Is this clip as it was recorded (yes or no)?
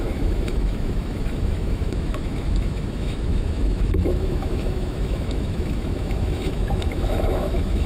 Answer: no